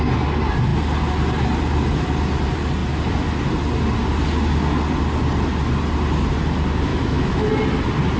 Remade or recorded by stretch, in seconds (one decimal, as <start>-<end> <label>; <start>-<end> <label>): 0.0-6.9 recorded; 6.9-7.5 remade; 7.5-8.2 recorded